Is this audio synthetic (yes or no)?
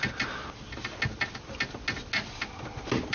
no